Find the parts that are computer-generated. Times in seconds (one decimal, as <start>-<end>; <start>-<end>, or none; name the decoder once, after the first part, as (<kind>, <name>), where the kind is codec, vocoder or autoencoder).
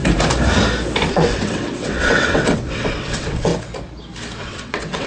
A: 1.1-3.5 (vocoder, WaveNeXt); 4.4-5.1